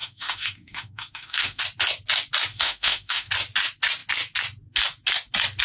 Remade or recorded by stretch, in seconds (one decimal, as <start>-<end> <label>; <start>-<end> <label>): 0.0-1.6 remade; 1.6-2.5 recorded; 2.5-3.3 remade; 3.3-5.6 recorded